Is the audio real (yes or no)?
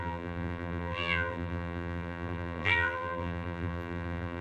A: no